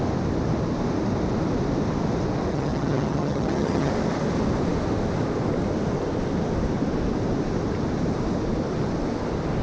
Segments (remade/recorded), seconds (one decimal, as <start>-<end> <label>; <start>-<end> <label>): 0.0-2.5 recorded; 2.5-3.9 remade; 3.9-9.6 recorded